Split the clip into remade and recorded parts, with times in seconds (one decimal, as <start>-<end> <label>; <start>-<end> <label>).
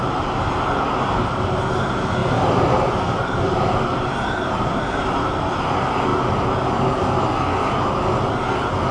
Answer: 0.0-2.2 recorded; 2.2-3.2 remade; 3.2-3.9 recorded; 3.9-5.3 remade; 5.3-8.9 recorded